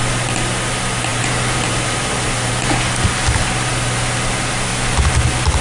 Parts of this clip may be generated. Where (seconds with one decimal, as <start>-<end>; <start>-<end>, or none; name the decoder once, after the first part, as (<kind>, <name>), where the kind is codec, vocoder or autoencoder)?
1.1-2.5 (vocoder, BigVGAN v2)